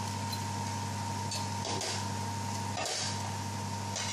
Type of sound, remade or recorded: recorded